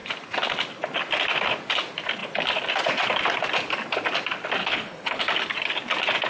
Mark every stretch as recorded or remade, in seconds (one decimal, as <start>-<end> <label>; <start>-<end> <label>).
0.0-4.6 recorded; 4.6-5.2 remade; 5.2-6.3 recorded